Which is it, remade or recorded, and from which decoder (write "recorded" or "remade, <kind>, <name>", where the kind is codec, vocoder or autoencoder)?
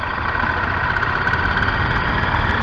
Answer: recorded